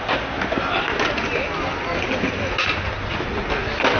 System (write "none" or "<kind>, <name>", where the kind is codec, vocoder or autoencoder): none